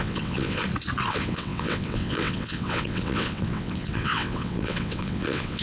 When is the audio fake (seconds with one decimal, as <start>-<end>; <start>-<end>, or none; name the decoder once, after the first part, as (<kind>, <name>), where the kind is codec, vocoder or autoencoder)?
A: 0.0-0.6 (vocoder, WaveNeXt); 1.1-5.6